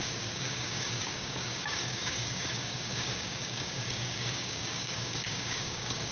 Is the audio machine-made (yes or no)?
yes